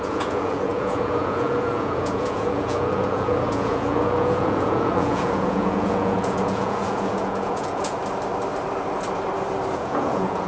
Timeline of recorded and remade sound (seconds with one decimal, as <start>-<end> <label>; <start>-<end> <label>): 0.0-8.0 remade; 8.0-9.7 recorded; 9.7-10.5 remade